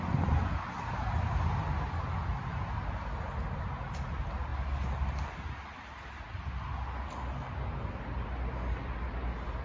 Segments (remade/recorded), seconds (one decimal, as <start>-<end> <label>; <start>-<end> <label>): 0.0-9.6 recorded